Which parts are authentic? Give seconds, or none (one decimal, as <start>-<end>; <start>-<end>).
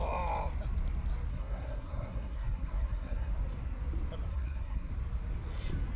0.0-1.3; 3.3-4.3; 4.9-6.0